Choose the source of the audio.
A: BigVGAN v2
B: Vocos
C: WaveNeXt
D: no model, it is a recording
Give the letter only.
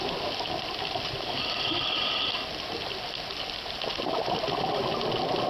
D